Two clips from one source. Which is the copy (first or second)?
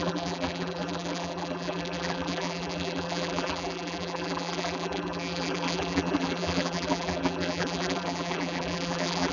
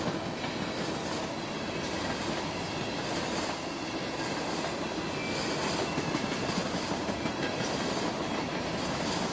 first